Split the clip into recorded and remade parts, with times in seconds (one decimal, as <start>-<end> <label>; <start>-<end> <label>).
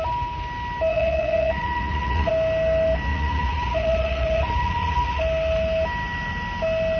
0.0-0.9 recorded; 0.9-2.3 remade; 2.3-3.1 recorded; 3.1-5.2 remade; 5.2-7.0 recorded